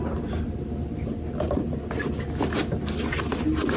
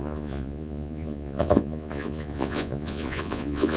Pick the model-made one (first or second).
second